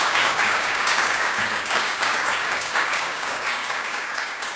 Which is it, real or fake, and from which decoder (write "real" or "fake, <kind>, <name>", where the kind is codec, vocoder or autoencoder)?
fake, codec, DAC